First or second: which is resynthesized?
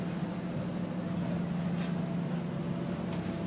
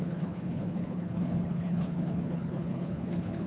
second